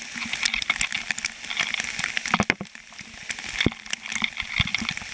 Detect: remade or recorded recorded